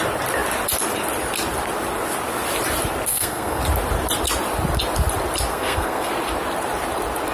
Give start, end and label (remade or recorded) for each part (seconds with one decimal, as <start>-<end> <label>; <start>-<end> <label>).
0.0-3.1 recorded; 3.1-3.6 remade; 3.6-5.5 recorded; 5.5-6.1 remade; 6.1-7.3 recorded